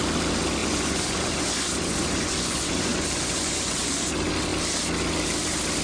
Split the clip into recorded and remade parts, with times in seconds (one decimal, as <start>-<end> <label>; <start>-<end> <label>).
0.0-0.6 recorded; 0.6-4.1 remade; 4.1-5.8 recorded